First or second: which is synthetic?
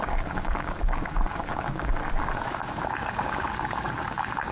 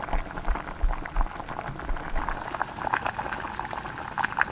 first